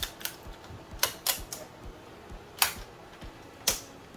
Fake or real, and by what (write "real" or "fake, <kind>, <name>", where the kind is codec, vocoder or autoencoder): real